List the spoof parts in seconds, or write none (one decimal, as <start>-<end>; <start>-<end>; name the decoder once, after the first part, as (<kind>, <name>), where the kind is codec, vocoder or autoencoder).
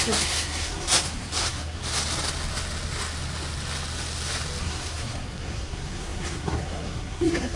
0.0-1.8 (codec, SNAC); 4.6-7.6